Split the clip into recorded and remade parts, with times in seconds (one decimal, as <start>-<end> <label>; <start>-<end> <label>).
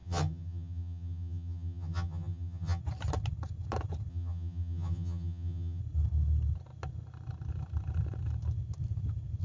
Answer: 0.0-2.8 remade; 2.8-4.1 recorded; 4.1-5.8 remade; 5.8-9.4 recorded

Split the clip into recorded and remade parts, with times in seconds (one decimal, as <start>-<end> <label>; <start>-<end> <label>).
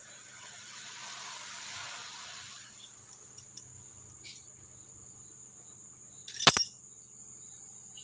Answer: 0.0-0.9 remade; 0.9-2.0 recorded; 2.0-3.3 remade; 3.3-8.0 recorded